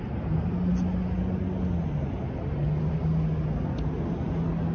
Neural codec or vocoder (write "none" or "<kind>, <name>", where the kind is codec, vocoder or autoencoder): none